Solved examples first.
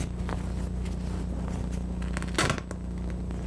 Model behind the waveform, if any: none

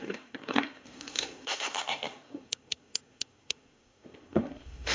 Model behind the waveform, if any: codec, SNAC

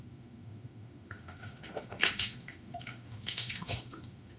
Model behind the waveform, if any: autoencoder, DAC-VAE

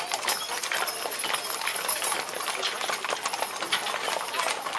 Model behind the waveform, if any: none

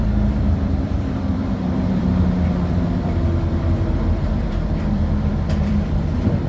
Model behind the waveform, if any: vocoder, BigVGAN v2